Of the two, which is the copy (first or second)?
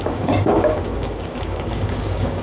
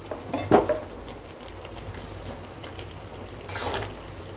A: first